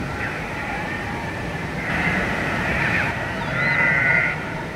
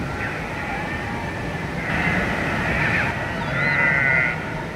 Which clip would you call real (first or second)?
second